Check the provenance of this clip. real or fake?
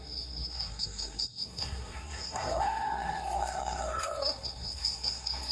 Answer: fake